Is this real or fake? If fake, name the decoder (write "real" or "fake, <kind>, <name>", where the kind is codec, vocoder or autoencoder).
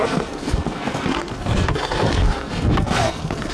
fake, codec, SNAC